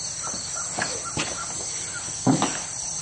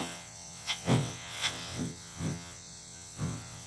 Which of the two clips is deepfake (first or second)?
second